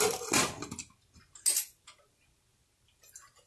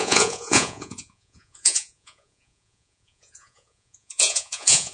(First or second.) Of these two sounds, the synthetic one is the second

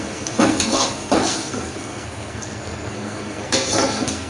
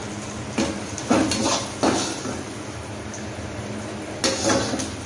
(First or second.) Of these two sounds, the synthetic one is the first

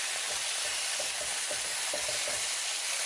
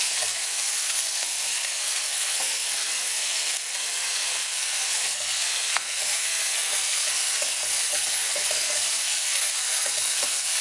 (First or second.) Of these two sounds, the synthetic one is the second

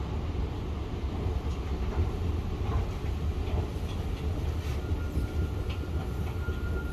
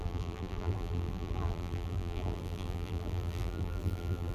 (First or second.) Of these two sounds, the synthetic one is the second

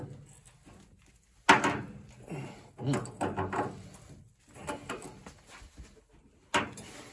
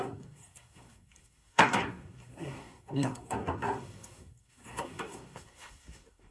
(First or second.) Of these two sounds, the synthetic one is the second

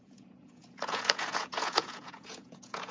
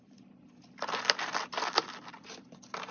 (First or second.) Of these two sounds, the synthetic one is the first